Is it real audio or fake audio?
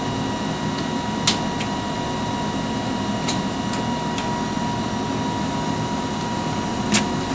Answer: real